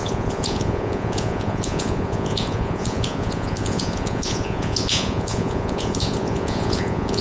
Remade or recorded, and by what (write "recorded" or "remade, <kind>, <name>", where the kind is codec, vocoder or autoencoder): remade, vocoder, Vocos